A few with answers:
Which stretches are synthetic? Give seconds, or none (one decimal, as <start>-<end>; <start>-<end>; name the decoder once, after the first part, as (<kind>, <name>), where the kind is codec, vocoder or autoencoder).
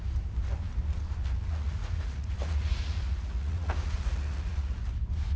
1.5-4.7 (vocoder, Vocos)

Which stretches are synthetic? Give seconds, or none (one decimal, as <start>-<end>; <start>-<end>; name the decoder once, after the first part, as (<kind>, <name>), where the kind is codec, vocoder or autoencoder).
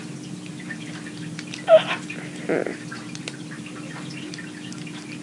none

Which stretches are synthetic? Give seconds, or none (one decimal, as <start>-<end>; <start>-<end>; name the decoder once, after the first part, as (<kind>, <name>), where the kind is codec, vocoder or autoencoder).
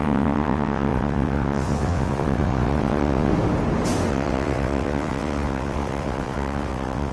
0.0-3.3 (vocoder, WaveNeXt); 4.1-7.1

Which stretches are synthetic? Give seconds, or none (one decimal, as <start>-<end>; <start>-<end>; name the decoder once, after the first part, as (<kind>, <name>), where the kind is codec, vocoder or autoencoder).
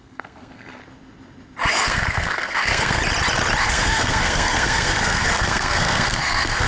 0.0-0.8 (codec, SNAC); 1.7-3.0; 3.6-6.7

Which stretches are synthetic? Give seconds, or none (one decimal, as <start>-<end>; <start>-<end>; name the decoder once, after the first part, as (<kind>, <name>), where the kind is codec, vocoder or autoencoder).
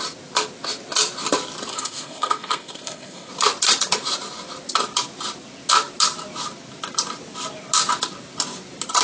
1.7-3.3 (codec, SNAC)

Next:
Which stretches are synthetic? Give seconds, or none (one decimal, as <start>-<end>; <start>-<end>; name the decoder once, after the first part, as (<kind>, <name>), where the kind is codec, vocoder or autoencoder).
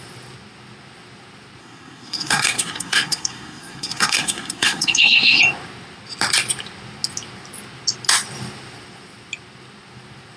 1.6-5.4 (codec, SNAC)